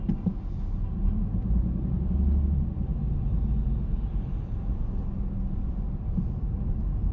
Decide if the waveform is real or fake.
real